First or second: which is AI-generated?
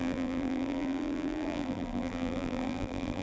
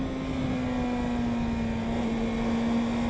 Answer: first